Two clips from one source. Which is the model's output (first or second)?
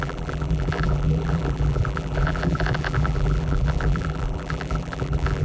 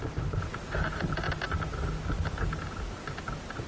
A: first